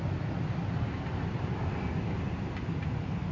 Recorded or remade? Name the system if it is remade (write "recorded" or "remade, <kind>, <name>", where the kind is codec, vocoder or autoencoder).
recorded